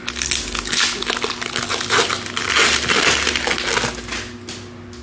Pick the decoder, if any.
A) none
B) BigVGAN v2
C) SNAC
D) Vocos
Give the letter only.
A